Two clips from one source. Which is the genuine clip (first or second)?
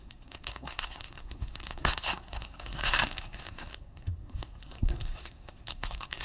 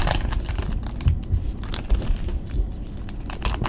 second